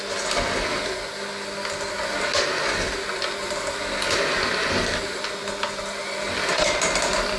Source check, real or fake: real